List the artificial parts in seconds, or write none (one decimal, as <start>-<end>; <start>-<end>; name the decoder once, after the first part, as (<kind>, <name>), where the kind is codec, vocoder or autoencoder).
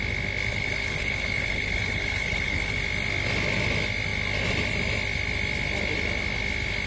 0.5-2.8 (codec, HILCodec)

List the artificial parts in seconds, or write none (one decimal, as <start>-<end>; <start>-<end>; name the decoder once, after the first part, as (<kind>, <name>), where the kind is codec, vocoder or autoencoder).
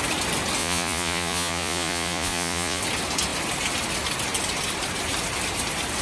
0.6-2.8 (vocoder, Vocos)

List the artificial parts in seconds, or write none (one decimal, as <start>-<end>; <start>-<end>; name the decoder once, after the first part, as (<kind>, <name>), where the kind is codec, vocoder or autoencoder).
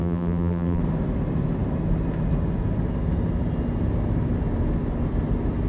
0.0-0.8 (vocoder, BigVGAN v2)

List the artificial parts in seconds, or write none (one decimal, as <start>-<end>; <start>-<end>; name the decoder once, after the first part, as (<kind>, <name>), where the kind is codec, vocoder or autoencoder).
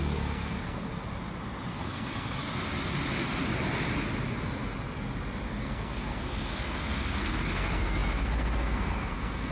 0.0-0.9 (codec, SNAC); 1.7-2.4; 5.6-9.5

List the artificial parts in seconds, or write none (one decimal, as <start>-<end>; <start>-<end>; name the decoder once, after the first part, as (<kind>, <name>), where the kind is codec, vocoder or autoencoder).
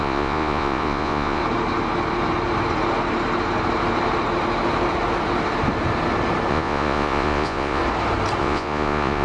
0.0-1.4 (vocoder, Vocos); 6.5-7.8; 8.4-9.2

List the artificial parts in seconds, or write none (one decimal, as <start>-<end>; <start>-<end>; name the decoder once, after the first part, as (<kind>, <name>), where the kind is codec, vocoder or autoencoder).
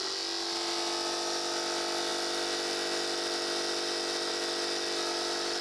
none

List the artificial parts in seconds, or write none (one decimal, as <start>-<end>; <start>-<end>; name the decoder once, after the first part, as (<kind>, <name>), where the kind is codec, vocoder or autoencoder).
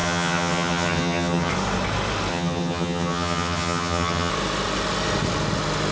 0.0-1.5 (vocoder, HiFi-GAN); 2.3-4.3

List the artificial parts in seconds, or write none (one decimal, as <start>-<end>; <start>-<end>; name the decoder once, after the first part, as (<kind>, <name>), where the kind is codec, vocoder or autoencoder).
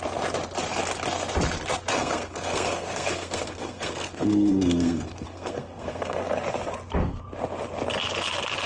1.9-6.3 (codec, SNAC)